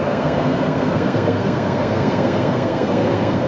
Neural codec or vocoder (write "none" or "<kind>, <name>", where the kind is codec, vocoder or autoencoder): codec, SNAC